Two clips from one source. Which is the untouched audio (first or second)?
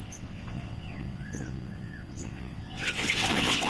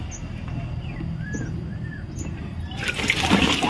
second